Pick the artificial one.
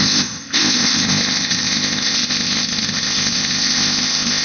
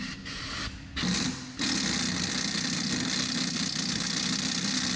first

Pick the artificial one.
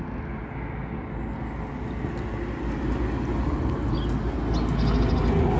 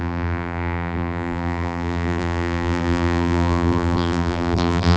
second